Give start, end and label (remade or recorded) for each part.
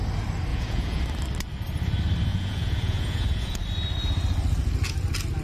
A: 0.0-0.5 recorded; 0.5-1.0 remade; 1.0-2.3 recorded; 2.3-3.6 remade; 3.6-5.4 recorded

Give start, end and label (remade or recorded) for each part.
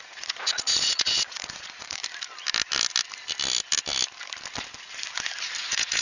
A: 0.0-2.0 remade; 2.0-5.6 recorded; 5.6-6.0 remade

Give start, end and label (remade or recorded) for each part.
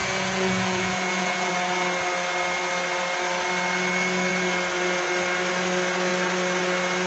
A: 0.0-1.5 remade; 1.5-7.1 recorded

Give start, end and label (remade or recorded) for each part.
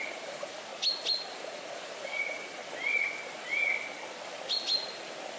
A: 0.0-0.7 remade; 0.7-1.3 recorded; 1.3-2.6 remade; 2.6-5.4 recorded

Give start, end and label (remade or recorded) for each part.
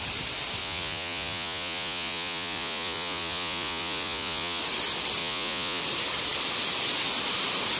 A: 0.0-0.6 recorded; 0.6-4.6 remade; 4.6-5.2 recorded; 5.2-5.8 remade; 5.8-7.8 recorded